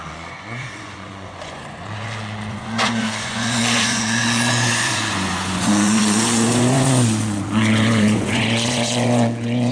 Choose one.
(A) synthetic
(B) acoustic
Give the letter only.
A